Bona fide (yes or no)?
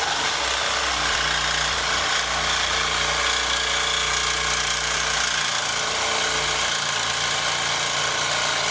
yes